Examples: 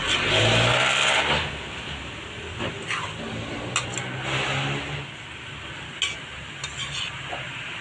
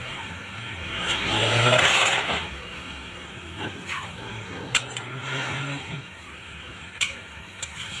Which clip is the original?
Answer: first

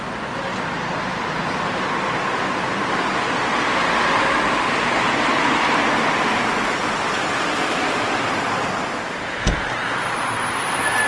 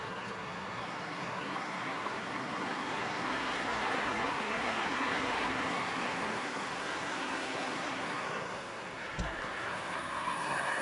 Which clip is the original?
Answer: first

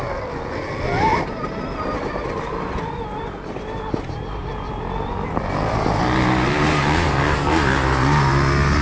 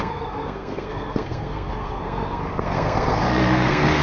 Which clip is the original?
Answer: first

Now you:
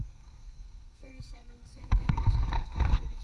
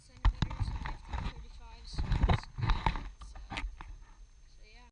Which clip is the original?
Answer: second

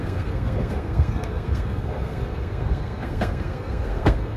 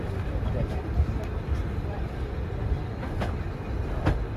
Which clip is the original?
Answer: second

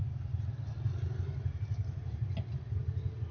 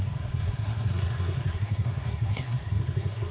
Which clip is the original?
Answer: first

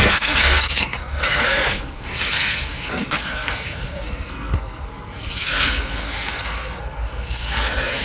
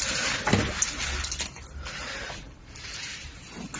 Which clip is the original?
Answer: second